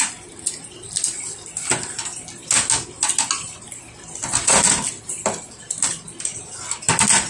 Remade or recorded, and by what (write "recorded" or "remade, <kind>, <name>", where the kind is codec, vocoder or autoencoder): recorded